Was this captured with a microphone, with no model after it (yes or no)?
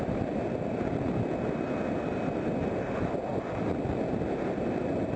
yes